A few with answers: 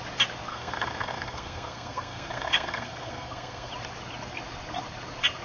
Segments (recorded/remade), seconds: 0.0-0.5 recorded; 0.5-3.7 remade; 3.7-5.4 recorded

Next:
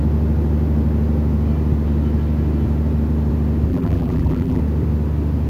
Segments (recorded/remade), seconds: 0.0-3.7 recorded; 3.7-4.6 remade; 4.6-5.5 recorded

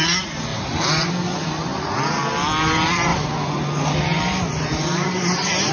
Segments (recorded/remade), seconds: 0.0-0.5 recorded; 0.5-1.1 remade; 1.1-1.7 recorded; 1.7-2.2 remade; 2.2-3.1 recorded; 3.1-5.7 remade